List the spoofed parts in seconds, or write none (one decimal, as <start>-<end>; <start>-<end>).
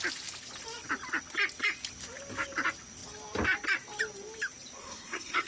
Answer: 4.8-5.5